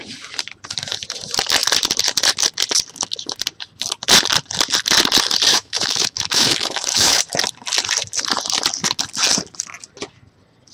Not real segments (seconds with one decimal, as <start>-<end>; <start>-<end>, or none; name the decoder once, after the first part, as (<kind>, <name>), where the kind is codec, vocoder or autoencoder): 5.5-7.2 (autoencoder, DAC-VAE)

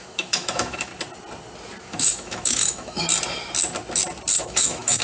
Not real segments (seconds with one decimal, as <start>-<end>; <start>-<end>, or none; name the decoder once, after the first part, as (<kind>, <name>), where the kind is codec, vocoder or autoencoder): 0.0-0.9 (autoencoder, DAC-VAE); 1.8-3.1; 4.4-5.0

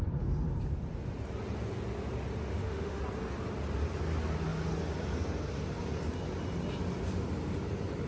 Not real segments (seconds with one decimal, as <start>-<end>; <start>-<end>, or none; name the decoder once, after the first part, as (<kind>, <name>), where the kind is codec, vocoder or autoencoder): 2.4-3.0 (autoencoder, DAC-VAE)

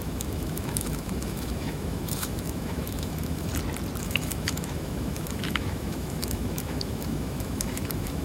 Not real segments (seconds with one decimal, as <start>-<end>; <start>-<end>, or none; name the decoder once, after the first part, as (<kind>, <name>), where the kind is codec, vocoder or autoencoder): 0.0-3.5 (autoencoder, DAC-VAE); 4.0-8.2

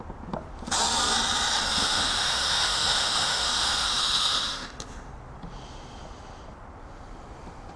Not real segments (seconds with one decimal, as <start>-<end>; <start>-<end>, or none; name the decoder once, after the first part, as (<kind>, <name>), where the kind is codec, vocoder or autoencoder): 1.8-5.1 (autoencoder, DAC-VAE)

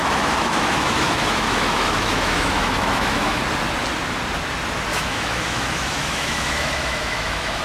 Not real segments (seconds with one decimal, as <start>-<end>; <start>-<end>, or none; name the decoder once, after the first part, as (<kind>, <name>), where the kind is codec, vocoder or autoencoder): 0.0-3.4 (autoencoder, DAC-VAE); 4.9-7.6